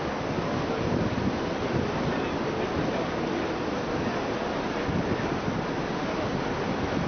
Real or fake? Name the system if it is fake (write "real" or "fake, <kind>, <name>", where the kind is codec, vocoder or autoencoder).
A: real